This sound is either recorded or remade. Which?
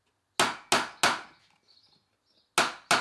recorded